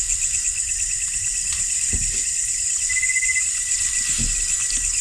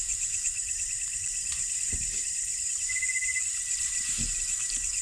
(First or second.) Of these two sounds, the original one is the first